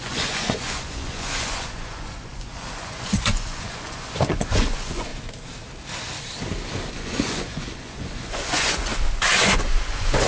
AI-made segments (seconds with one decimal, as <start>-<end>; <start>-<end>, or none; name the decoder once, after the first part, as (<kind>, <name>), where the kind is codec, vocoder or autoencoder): 0.0-5.1 (vocoder, Vocos); 6.9-8.9; 9.4-10.3